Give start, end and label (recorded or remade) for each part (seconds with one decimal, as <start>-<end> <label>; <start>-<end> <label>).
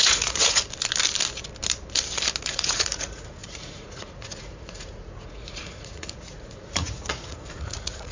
0.0-0.6 remade; 0.6-2.4 recorded; 2.4-8.1 remade